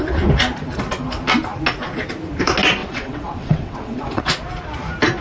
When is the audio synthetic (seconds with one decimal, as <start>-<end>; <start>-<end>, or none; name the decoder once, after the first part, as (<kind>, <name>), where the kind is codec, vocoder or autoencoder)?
2.8-4.2 (vocoder, WaveNeXt)